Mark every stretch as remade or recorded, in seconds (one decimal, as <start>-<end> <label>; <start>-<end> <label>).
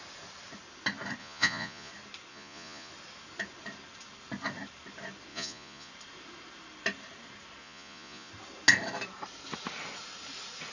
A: 0.0-1.2 recorded; 1.2-1.9 remade; 1.9-2.3 recorded; 2.3-2.9 remade; 2.9-5.3 recorded; 5.3-5.9 remade; 5.9-7.6 recorded; 7.6-8.3 remade; 8.3-10.7 recorded